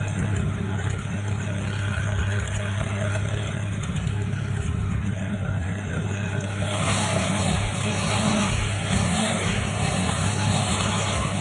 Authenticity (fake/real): fake